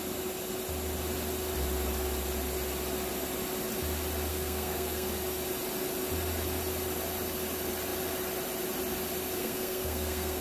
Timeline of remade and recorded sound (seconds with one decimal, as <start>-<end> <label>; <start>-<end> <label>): 0.0-4.3 recorded; 4.3-5.1 remade; 5.1-9.4 recorded; 9.4-10.4 remade

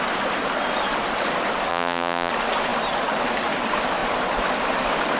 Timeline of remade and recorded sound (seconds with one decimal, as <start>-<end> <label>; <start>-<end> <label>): 0.0-1.7 recorded; 1.7-2.3 remade; 2.3-5.2 recorded

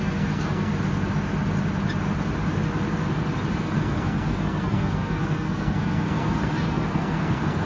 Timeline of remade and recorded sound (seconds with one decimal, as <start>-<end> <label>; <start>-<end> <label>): 0.0-0.7 remade; 0.7-3.6 recorded; 3.6-7.7 remade

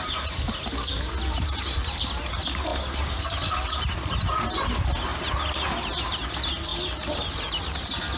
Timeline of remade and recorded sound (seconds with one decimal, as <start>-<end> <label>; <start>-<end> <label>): 0.0-8.2 recorded